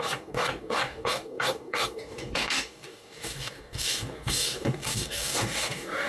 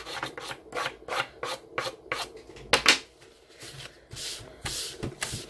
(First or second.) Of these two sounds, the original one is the second